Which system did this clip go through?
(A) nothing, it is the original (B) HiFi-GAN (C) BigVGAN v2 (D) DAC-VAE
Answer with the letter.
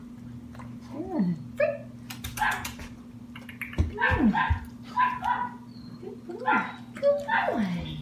A